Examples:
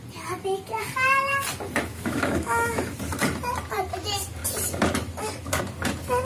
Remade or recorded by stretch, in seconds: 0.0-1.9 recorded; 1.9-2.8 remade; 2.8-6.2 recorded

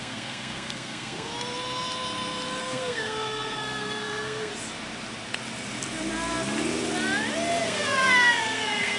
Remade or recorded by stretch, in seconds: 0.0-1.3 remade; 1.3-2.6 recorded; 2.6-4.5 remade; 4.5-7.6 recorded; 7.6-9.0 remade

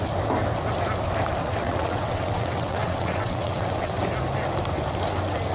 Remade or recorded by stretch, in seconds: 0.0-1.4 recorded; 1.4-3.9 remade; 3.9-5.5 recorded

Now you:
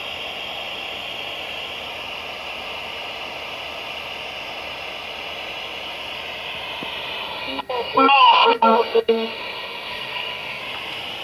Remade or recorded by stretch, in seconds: 0.0-7.4 recorded; 7.4-10.6 remade; 10.6-11.2 recorded